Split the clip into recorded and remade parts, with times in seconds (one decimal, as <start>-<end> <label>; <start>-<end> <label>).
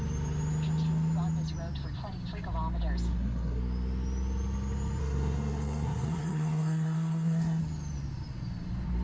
0.0-3.1 recorded; 3.1-3.6 remade; 3.6-5.0 recorded; 5.0-7.6 remade; 7.6-9.0 recorded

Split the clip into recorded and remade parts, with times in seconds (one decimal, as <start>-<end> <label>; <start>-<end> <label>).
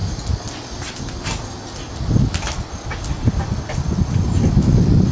0.0-3.1 recorded; 3.1-5.1 remade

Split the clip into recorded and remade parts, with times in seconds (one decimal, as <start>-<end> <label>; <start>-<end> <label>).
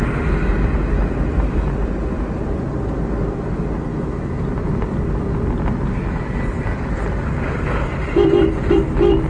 0.0-3.9 recorded; 3.9-4.4 remade; 4.4-9.3 recorded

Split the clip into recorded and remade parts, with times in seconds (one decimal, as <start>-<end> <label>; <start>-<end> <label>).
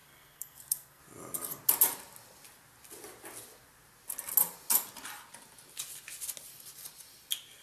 0.0-1.0 remade; 1.0-7.6 recorded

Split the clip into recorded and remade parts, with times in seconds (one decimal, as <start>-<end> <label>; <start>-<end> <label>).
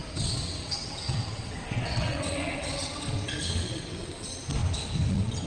0.0-4.6 remade; 4.6-5.1 recorded; 5.1-5.5 remade